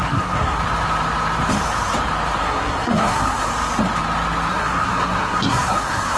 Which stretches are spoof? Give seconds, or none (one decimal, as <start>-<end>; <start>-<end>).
0.0-0.6; 2.4-3.5; 4.5-6.2